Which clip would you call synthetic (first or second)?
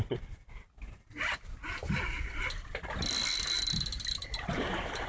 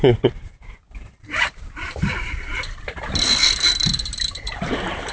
second